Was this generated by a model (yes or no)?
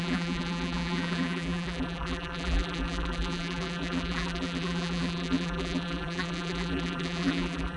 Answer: yes